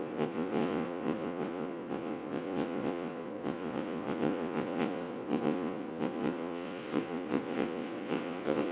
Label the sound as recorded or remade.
remade